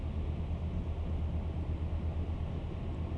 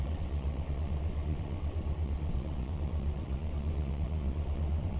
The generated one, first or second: second